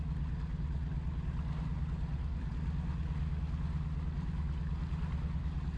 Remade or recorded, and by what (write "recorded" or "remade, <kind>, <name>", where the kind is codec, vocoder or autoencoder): recorded